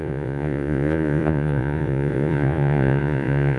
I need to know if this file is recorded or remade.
remade